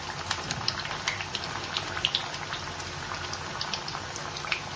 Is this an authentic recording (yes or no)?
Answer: yes